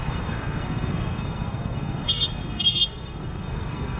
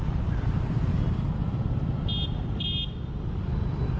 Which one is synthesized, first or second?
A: first